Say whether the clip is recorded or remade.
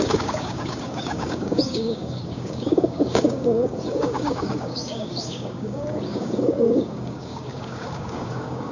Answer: remade